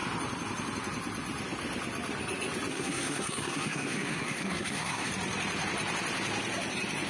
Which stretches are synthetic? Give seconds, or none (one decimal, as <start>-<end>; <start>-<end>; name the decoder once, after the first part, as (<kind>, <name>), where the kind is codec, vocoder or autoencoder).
2.7-5.1 (codec, SNAC)